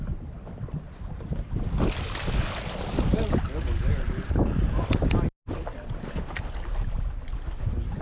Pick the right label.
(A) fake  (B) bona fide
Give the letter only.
B